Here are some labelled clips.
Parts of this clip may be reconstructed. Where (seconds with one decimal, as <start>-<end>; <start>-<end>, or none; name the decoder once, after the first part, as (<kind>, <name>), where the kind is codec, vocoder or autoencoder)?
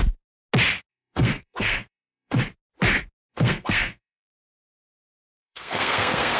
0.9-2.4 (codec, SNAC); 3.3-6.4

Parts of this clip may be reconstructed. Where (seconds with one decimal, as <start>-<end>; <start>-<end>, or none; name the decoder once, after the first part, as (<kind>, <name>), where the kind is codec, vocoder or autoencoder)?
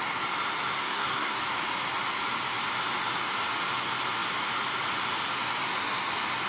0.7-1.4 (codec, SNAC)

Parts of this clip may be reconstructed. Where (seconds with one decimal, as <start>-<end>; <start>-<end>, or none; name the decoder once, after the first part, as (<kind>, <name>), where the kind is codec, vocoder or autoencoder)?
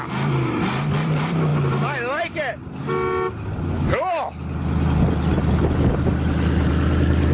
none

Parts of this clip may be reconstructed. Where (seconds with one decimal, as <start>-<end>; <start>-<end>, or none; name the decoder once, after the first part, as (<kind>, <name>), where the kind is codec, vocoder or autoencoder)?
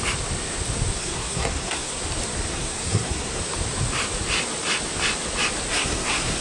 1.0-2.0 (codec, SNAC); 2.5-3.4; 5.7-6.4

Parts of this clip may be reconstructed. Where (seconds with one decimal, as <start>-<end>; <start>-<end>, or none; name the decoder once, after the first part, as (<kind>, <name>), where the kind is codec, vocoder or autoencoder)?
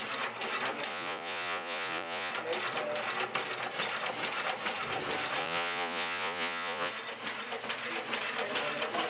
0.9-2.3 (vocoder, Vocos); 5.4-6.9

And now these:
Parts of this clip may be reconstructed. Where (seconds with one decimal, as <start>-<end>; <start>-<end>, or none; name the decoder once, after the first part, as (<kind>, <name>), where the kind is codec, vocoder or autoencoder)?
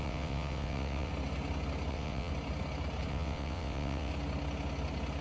0.0-1.1 (vocoder, WaveNeXt); 1.9-2.3; 3.1-4.1